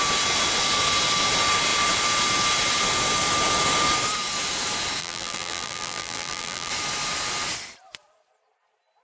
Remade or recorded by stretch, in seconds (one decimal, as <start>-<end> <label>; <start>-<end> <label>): 0.0-5.0 recorded; 5.0-6.7 remade; 6.7-9.0 recorded